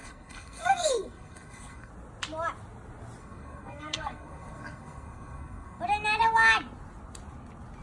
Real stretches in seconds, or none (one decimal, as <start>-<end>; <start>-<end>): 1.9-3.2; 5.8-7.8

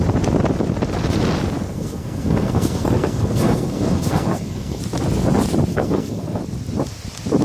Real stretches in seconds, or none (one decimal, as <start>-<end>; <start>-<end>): 0.0-1.7; 4.8-5.7; 6.4-7.4

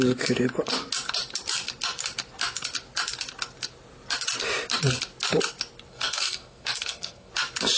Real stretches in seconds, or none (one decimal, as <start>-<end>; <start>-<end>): 0.0-5.9; 7.3-7.8

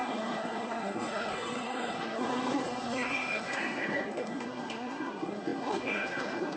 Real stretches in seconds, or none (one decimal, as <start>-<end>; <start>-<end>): none

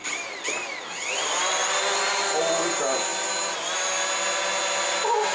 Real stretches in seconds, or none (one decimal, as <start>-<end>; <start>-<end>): 0.0-5.3